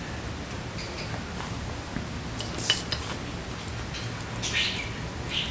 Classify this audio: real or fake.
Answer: real